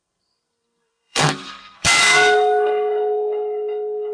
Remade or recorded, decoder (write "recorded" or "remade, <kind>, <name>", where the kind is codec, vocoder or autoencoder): remade, codec, SNAC